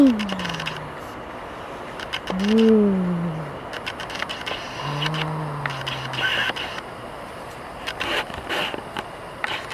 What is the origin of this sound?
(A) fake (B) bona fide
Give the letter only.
B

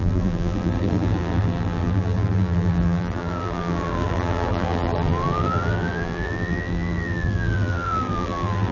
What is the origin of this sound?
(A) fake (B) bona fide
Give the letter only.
A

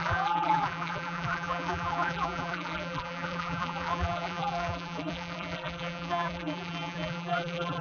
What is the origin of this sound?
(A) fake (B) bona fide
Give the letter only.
A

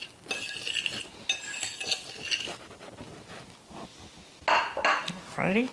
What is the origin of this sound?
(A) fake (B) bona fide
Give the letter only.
B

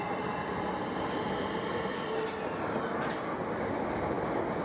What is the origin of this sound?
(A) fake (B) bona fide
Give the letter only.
A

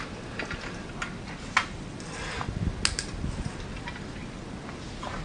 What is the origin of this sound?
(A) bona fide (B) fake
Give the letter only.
A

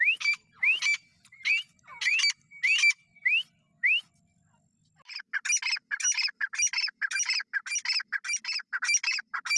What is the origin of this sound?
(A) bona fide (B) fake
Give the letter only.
A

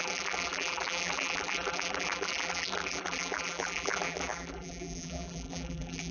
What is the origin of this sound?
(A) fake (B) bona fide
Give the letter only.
A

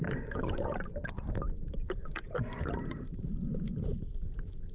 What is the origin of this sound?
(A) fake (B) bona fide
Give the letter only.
A